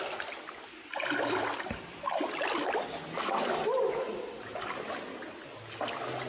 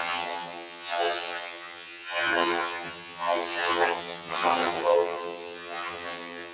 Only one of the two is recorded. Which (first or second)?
first